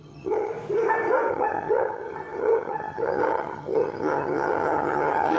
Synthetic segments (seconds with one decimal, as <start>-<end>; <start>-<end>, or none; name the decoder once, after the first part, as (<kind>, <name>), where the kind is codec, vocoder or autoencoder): 0.0-0.5 (vocoder, HiFi-GAN); 1.3-5.4